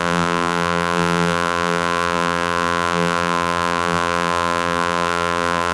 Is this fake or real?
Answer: fake